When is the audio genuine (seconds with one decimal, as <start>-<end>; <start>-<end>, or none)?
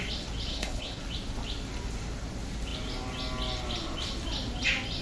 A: 0.0-0.5; 1.0-5.0